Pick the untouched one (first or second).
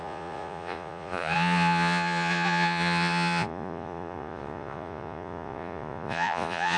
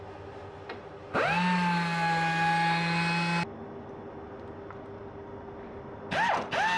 second